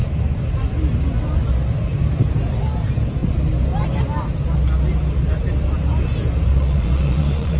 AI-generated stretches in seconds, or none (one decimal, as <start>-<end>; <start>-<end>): 6.5-7.6

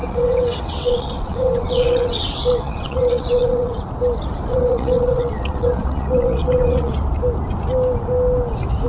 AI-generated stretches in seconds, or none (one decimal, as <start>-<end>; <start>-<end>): 0.0-3.8; 4.5-6.9

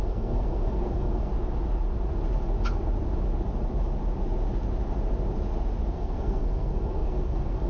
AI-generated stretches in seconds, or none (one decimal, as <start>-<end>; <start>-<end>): 0.0-1.3; 5.9-7.7

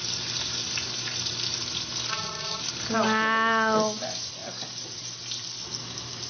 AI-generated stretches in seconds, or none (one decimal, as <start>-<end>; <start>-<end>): 2.1-2.6

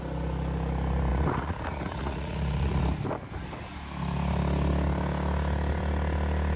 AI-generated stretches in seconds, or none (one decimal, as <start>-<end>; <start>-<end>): 1.1-2.8

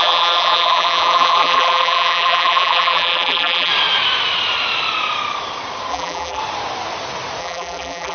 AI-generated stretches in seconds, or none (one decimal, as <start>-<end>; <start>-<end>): 0.0-3.7; 5.9-6.4; 7.4-8.1

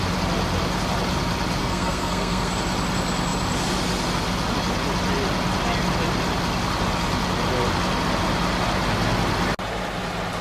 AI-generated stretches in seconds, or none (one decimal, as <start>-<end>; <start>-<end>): 1.6-2.5

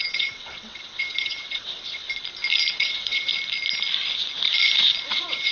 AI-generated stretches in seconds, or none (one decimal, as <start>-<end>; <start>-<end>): 0.0-2.0; 2.7-3.3; 5.1-5.5